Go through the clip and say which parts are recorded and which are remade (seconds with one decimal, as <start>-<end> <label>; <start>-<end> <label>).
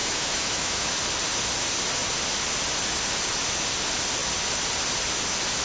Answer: 0.0-0.9 remade; 0.9-5.6 recorded